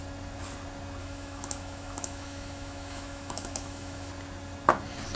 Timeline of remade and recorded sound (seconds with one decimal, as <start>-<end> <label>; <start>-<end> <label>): 0.0-1.0 recorded; 1.0-4.1 remade; 4.1-5.2 recorded

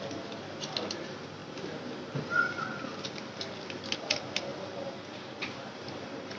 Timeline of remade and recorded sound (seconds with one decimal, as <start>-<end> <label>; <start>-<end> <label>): 0.0-6.4 recorded

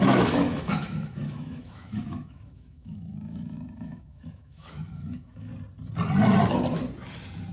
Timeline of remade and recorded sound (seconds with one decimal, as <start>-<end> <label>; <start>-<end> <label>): 0.0-5.5 remade; 5.5-7.5 recorded

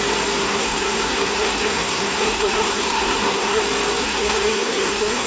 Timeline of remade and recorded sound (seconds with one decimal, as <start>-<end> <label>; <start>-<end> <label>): 0.0-0.4 recorded; 0.4-3.6 remade; 3.6-4.0 recorded; 4.0-5.3 remade

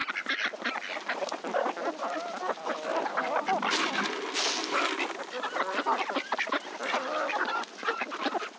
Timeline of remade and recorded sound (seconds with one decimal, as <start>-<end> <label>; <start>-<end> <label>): 0.0-8.6 recorded